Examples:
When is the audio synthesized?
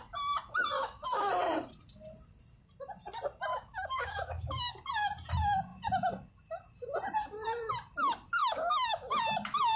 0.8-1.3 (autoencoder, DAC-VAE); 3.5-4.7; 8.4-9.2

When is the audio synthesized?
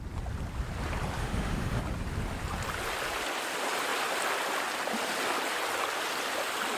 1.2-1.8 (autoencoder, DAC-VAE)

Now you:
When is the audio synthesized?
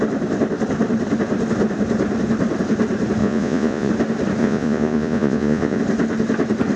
3.2-3.9 (vocoder, Vocos); 4.4-5.8